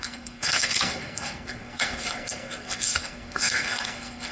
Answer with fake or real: fake